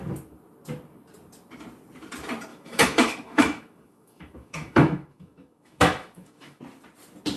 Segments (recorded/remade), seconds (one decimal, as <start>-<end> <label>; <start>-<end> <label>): 0.0-2.5 recorded; 2.5-6.6 remade; 6.6-7.4 recorded